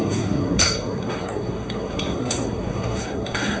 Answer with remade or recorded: remade